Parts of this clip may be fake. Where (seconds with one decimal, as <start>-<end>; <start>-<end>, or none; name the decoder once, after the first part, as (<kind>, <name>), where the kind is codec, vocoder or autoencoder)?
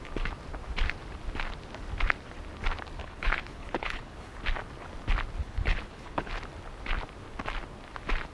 3.0-4.4 (codec, HILCodec); 5.4-6.3